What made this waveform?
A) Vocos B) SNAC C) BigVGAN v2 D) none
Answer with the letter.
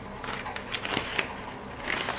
D